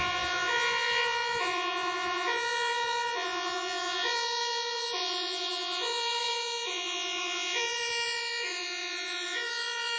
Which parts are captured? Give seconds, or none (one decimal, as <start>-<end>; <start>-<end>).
none

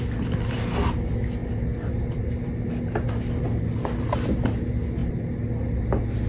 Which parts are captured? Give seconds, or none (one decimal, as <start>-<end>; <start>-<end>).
0.0-6.3

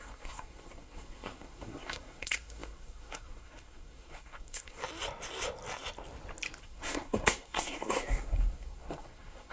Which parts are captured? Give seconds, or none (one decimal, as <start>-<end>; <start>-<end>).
4.8-6.6

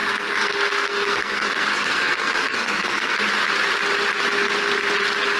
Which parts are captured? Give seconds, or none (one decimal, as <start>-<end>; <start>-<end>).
3.2-5.4

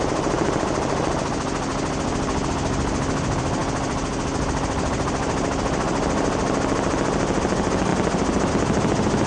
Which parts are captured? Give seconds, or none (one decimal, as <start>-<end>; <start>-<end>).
0.0-9.3

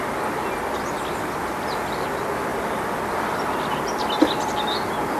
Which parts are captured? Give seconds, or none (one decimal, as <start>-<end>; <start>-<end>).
0.0-5.2

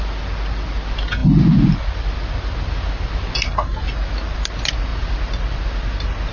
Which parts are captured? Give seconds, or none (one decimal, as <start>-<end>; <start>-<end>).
0.0-6.3